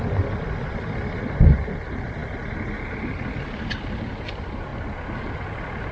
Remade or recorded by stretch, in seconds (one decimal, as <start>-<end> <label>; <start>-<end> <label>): 0.0-5.9 recorded